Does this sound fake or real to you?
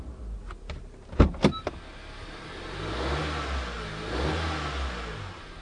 real